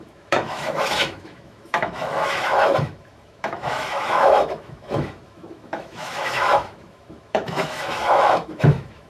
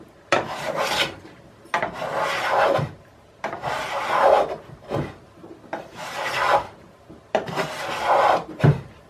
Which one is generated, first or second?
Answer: first